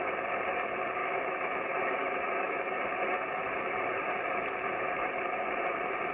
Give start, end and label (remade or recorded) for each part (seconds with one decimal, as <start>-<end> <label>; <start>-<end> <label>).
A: 0.0-1.0 recorded; 1.0-2.8 remade; 2.8-6.1 recorded